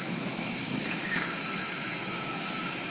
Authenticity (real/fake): fake